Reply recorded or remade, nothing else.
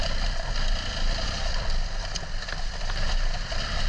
recorded